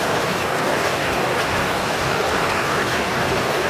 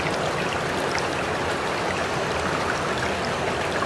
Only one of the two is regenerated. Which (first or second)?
first